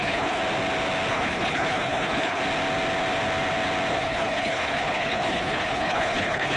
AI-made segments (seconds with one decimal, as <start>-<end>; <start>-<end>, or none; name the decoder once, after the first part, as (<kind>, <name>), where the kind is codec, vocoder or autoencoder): 0.0-0.4 (codec, HILCodec); 1.1-2.4; 3.9-6.6